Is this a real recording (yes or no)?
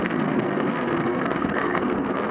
no